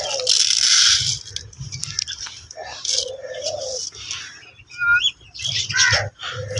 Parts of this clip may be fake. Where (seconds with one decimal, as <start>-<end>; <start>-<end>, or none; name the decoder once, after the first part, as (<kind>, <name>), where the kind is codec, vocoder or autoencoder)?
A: none